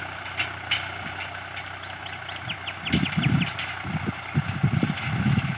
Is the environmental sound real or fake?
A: real